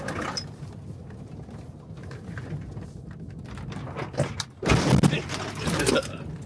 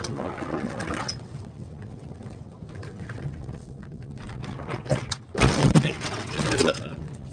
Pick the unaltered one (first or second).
first